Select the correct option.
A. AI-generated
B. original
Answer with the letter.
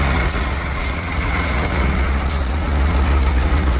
A